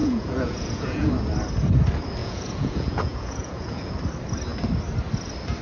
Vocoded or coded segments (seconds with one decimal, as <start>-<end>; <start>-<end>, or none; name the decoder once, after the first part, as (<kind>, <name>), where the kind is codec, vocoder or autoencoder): 0.0-1.1 (vocoder, Vocos); 2.2-4.0